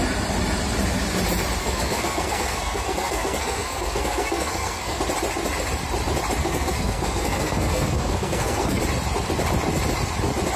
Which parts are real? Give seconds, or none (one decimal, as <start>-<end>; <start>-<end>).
0.0-1.6; 5.0-6.4; 8.8-10.6